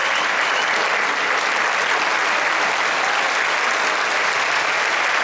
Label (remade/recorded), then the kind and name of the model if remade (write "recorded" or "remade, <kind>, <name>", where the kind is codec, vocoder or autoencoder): recorded